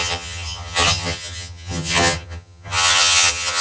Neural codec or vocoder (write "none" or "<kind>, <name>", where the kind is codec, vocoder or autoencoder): vocoder, HiFi-GAN